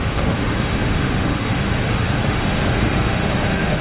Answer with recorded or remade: remade